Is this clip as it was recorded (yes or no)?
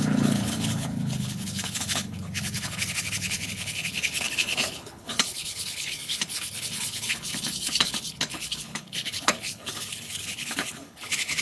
no